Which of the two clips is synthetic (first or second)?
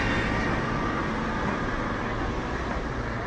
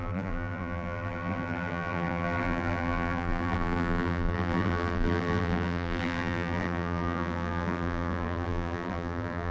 second